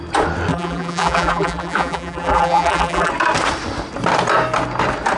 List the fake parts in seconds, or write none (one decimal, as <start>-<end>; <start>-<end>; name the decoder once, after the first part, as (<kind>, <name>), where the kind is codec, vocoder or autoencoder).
0.5-3.1 (vocoder, BigVGAN v2)